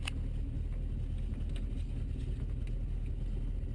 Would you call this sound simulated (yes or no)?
no